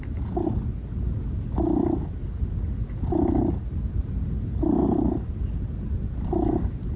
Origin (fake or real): real